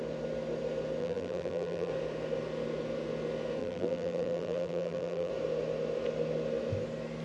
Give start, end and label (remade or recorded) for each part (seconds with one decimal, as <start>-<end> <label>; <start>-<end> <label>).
0.0-1.0 recorded; 1.0-1.9 remade; 1.9-3.6 recorded; 3.6-5.3 remade; 5.3-7.2 recorded